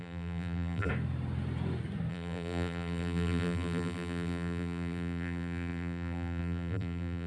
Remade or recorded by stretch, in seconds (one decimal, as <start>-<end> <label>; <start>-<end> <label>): 0.0-0.9 remade; 0.9-2.1 recorded; 2.1-7.3 remade